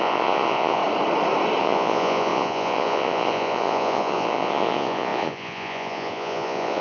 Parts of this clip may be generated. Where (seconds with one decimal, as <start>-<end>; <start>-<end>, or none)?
0.0-0.8; 1.6-6.8